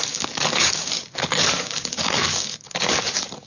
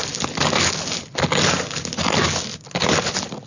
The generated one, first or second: first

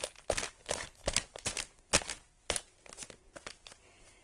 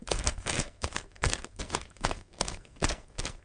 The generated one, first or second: second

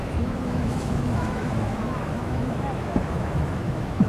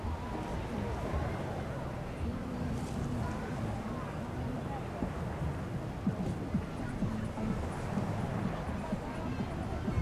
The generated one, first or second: first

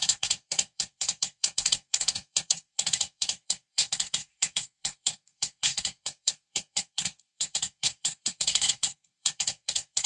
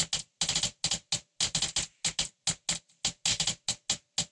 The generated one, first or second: first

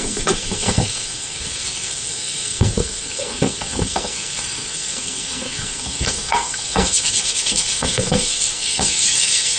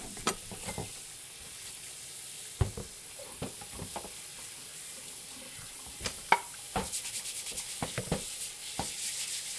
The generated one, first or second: first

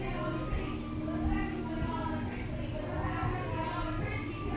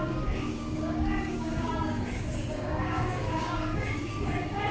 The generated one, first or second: second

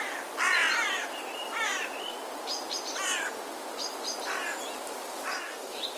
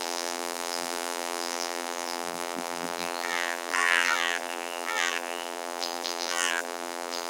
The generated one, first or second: second